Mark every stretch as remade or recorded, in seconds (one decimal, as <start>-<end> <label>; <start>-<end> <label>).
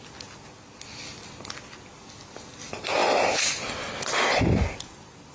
0.0-5.3 recorded